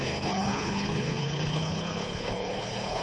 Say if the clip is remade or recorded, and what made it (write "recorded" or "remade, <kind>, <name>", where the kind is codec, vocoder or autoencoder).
remade, codec, HILCodec